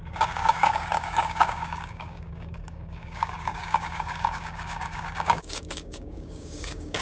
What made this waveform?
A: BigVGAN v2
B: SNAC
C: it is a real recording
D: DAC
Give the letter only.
D